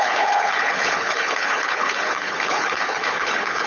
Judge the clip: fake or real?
fake